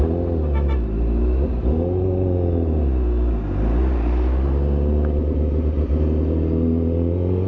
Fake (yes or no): no